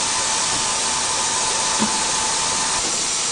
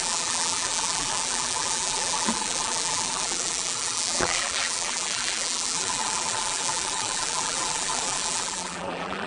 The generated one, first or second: second